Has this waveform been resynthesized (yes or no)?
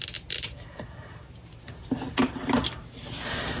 no